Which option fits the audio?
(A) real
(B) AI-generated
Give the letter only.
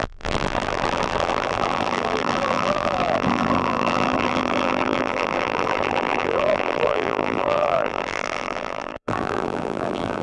B